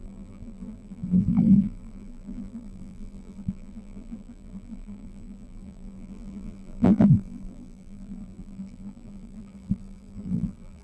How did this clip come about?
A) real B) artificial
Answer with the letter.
B